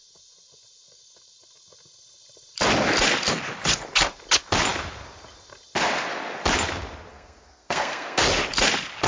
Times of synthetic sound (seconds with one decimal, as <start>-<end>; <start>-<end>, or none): 7.1-8.2